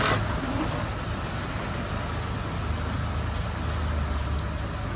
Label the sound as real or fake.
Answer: real